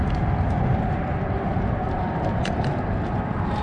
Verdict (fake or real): real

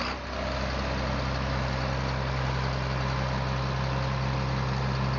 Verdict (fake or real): real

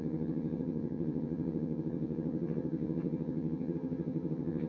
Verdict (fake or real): fake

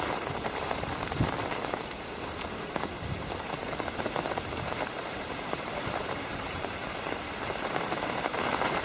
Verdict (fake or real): fake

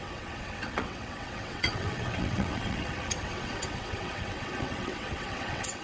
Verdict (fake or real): fake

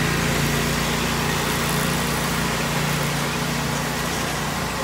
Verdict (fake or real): real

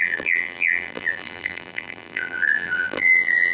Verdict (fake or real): fake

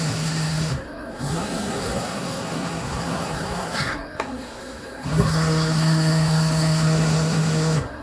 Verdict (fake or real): fake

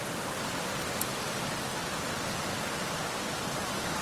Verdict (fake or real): real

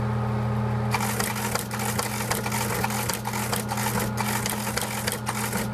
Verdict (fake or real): real